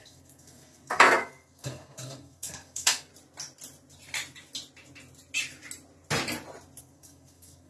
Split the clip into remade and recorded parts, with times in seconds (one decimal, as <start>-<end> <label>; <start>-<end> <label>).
0.0-3.1 remade; 3.1-6.8 recorded; 6.8-7.7 remade